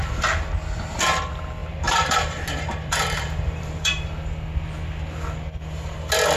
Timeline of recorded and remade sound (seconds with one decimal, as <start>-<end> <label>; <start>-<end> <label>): 0.0-1.6 recorded; 1.6-3.9 remade; 3.9-6.4 recorded